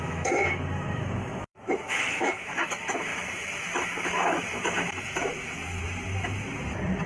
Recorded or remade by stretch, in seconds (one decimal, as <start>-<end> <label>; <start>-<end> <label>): 0.0-5.8 remade; 5.8-7.1 recorded